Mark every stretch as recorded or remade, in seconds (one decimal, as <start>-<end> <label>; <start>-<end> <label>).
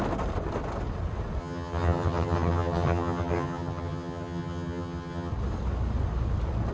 0.0-1.4 recorded; 1.4-5.3 remade; 5.3-6.7 recorded